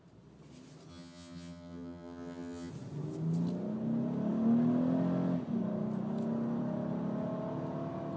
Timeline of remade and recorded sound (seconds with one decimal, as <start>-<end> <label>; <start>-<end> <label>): 0.0-0.9 recorded; 0.9-2.7 remade; 2.7-8.2 recorded